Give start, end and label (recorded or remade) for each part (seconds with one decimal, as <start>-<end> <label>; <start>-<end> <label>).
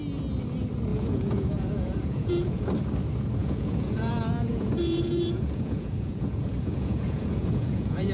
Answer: 0.0-0.9 recorded; 0.9-2.6 remade; 2.6-3.4 recorded; 3.4-8.1 remade